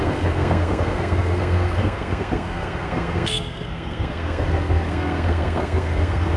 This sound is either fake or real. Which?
fake